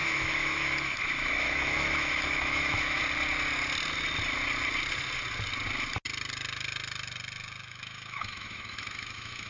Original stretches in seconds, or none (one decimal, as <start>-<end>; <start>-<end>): 3.0-7.7